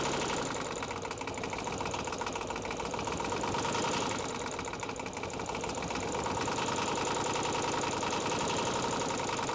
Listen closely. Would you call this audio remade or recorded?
recorded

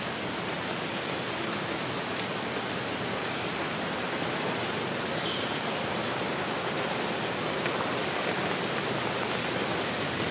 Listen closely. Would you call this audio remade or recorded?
recorded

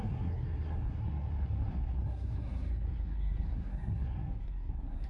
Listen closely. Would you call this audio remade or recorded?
remade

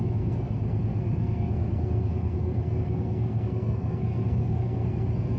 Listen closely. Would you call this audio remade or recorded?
remade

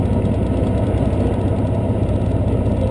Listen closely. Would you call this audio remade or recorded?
recorded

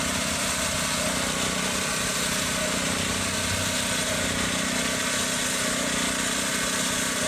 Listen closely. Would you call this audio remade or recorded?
recorded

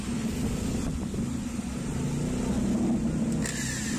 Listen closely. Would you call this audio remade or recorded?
recorded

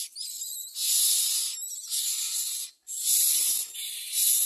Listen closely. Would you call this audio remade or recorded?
recorded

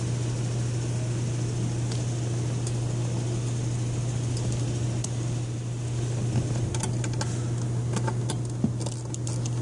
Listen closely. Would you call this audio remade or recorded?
recorded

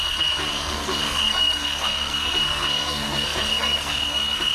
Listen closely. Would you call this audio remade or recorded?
remade